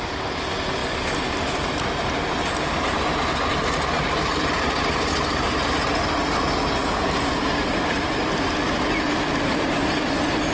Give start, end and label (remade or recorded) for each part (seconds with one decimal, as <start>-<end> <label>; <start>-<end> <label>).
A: 0.0-10.5 recorded